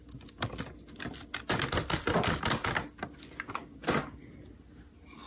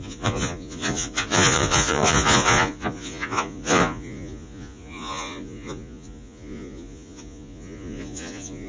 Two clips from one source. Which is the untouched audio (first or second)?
first